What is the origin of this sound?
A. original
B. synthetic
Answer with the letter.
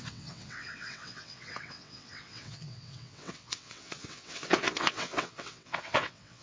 B